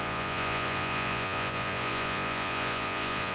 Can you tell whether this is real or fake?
fake